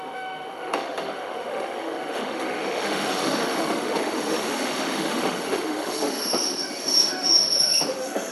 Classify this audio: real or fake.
fake